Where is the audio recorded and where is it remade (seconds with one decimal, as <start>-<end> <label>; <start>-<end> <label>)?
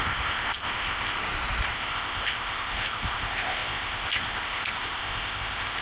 0.0-1.2 remade; 1.2-1.7 recorded; 1.7-5.8 remade